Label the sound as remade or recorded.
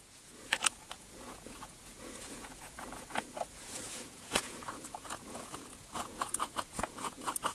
remade